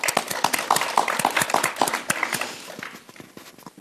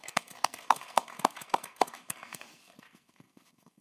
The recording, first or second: first